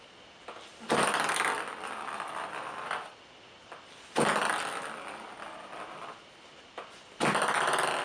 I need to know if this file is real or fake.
real